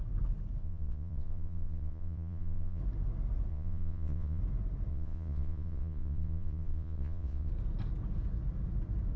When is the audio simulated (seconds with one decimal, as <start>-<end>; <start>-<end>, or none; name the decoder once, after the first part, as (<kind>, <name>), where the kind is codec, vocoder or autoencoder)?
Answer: 0.6-2.8 (vocoder, Vocos); 3.5-4.4; 4.9-7.5